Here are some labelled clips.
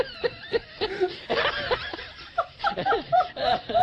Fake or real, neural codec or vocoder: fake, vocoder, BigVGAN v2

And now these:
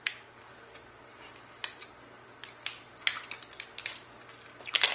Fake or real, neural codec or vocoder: real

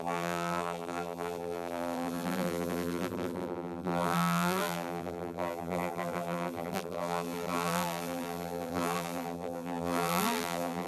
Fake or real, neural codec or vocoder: fake, vocoder, BigVGAN v2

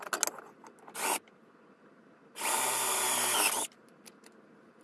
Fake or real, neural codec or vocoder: real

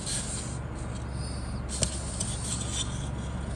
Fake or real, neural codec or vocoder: real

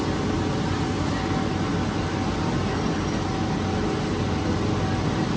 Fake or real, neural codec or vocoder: real